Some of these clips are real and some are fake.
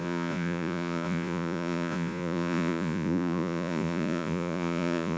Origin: fake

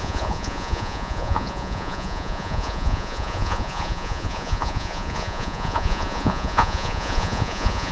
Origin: fake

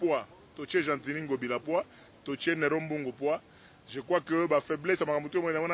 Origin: real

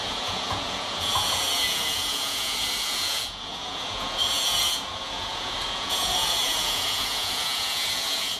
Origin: fake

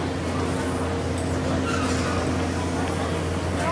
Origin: real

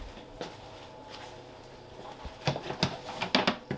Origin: real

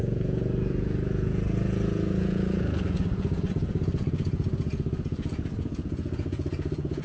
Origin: fake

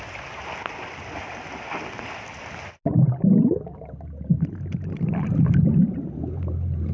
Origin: real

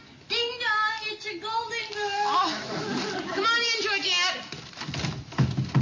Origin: real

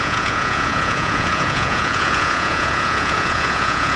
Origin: fake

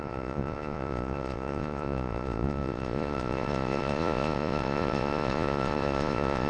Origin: fake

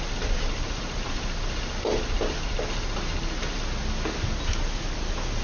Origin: real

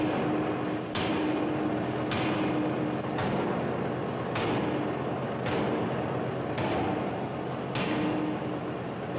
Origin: real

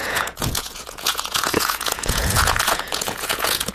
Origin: fake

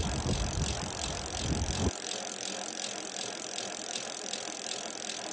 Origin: real